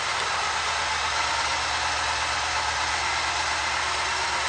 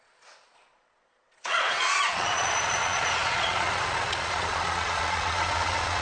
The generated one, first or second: second